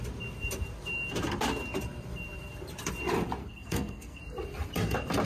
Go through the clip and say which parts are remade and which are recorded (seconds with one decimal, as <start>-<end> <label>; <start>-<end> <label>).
0.0-3.4 recorded; 3.4-4.2 remade; 4.2-5.3 recorded